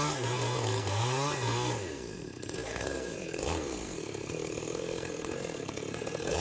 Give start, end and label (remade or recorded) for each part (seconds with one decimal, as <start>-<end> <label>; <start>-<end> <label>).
0.0-6.4 remade